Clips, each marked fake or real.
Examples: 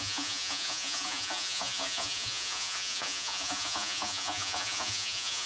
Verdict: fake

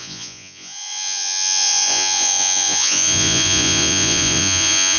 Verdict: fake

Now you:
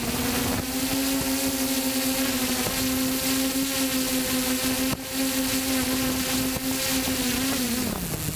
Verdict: real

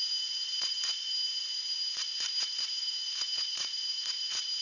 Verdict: fake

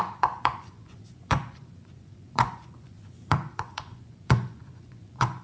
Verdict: fake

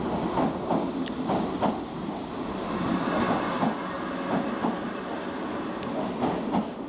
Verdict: real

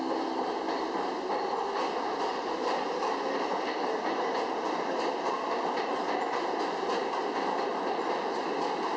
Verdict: real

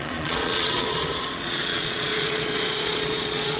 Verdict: fake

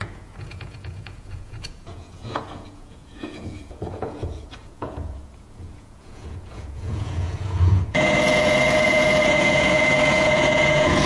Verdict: fake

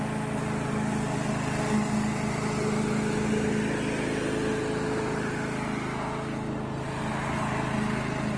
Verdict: real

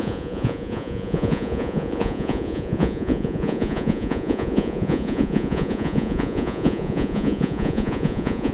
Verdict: fake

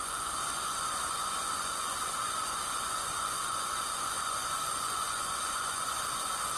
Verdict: fake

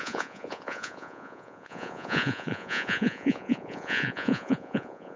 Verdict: fake